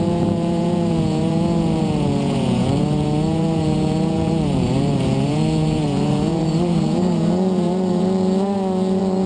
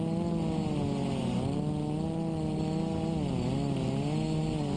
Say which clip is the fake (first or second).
first